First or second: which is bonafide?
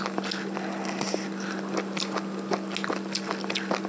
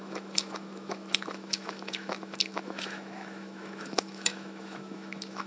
first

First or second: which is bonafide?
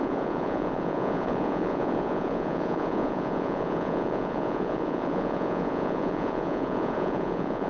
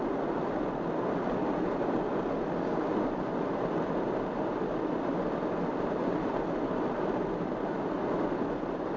second